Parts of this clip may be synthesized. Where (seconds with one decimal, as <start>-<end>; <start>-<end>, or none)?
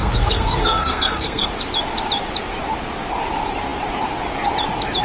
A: 0.0-1.5